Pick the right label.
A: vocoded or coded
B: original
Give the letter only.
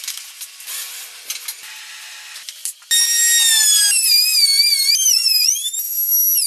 B